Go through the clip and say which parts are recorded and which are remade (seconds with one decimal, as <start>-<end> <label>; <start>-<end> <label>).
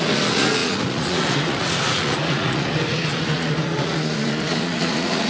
0.0-5.3 remade